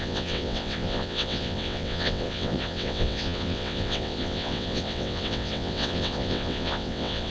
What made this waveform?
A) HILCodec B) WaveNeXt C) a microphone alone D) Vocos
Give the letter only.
B